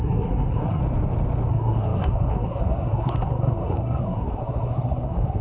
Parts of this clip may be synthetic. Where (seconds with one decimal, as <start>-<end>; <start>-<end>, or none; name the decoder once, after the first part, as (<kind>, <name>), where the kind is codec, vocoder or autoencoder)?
0.0-0.8 (codec, SNAC); 1.5-5.4